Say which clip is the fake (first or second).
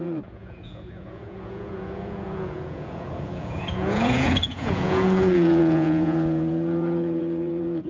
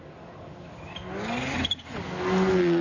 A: first